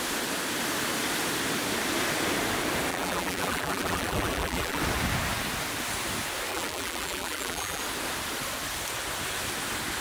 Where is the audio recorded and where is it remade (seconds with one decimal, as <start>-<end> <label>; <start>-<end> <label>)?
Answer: 0.0-2.9 recorded; 2.9-4.8 remade; 4.8-6.5 recorded; 6.5-7.8 remade; 7.8-10.0 recorded